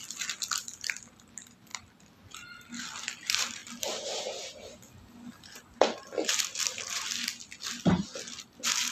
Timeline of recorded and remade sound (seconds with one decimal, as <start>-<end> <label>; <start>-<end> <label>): 0.0-8.9 recorded

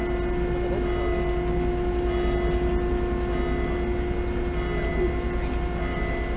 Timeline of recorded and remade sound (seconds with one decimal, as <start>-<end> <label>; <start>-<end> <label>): 0.0-6.4 recorded